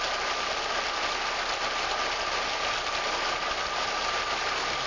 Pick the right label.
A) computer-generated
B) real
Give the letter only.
B